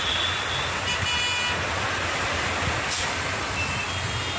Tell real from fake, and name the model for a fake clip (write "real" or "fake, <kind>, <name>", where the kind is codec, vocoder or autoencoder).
real